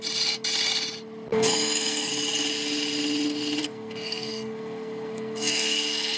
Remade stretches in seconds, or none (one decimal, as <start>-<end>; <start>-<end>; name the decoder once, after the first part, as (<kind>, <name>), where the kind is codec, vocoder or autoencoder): 1.3-2.1 (codec, SNAC); 3.6-6.2